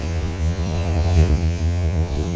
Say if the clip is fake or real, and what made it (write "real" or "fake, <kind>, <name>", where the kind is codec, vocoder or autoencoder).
fake, vocoder, Vocos